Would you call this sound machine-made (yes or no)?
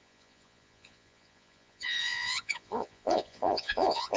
yes